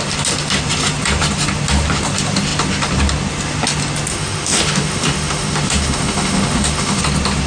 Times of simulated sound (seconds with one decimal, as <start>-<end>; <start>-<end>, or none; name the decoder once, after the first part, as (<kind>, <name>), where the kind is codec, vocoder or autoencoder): 4.1-7.0 (autoencoder, DAC-VAE)